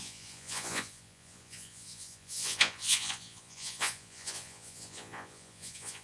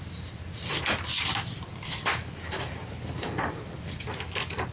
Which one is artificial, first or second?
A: first